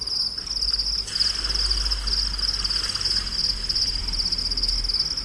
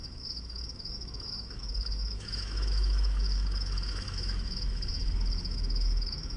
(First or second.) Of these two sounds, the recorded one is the first